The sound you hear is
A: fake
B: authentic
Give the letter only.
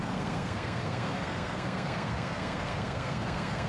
A